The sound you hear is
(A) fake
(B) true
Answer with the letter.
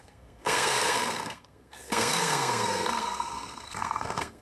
A